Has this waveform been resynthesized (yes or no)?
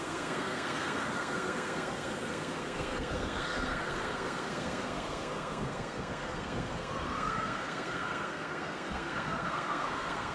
yes